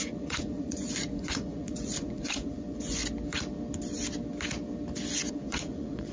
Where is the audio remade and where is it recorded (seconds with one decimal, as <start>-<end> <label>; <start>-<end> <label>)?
0.0-3.0 remade; 3.0-5.3 recorded; 5.3-6.1 remade